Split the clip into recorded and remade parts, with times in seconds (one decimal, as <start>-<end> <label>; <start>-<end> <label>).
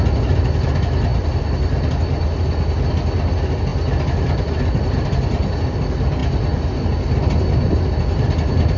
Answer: 0.0-8.8 recorded